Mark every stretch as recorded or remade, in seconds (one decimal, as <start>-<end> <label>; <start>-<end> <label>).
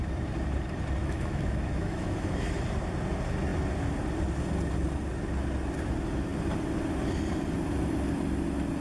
0.0-1.0 recorded; 1.0-2.6 remade; 2.6-8.8 recorded